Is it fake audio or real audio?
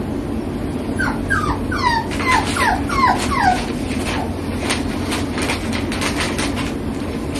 real